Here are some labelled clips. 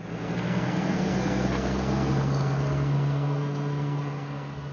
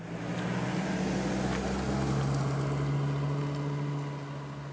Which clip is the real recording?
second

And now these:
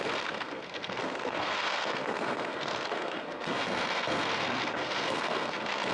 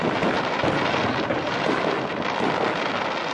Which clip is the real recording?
second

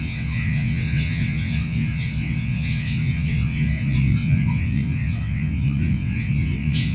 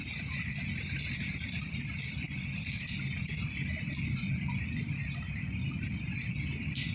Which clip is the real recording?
second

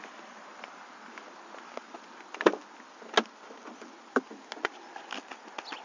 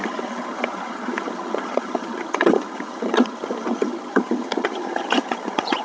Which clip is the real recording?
first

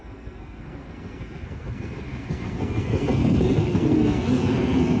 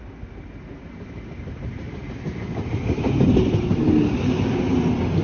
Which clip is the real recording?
second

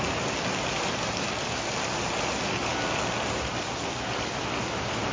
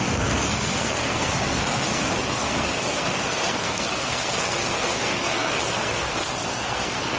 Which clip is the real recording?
first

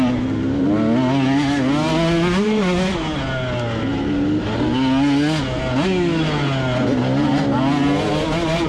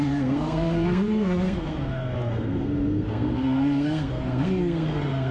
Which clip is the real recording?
first